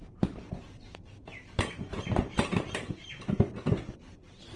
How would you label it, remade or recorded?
remade